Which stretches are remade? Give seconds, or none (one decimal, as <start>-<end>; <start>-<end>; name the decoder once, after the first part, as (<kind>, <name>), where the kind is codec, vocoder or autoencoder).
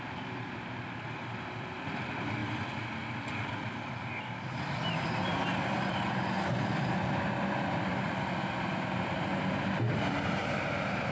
0.0-11.1 (vocoder, BigVGAN v2)